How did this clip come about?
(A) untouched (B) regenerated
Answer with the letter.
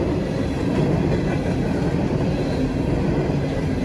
A